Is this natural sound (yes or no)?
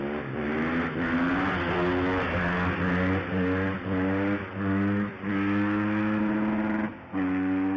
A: yes